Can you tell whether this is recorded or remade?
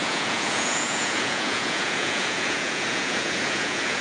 remade